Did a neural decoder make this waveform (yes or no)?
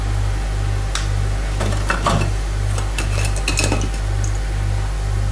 no